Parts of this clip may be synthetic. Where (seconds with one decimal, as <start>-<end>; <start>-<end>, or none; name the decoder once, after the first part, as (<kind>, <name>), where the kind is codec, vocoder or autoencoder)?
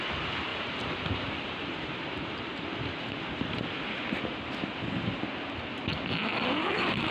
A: 0.5-2.6 (vocoder, BigVGAN v2)